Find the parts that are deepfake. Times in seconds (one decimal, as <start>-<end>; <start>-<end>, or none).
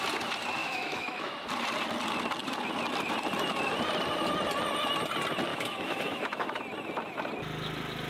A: 0.6-1.3; 5.5-6.6